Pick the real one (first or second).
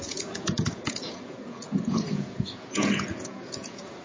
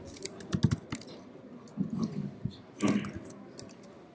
second